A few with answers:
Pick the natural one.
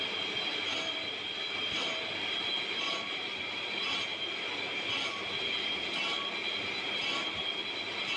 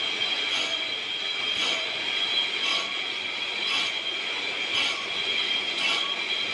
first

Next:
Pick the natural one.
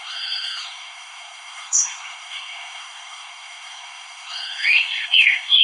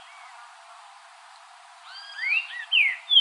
second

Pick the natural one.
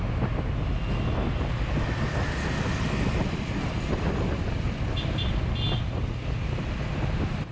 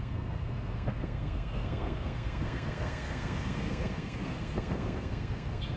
first